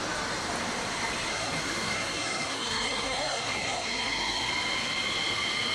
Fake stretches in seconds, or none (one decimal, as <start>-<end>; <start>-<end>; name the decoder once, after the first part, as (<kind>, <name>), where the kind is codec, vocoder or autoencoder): 1.3-4.5 (codec, SNAC)